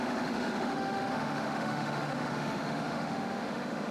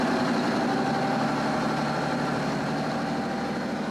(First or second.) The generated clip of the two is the first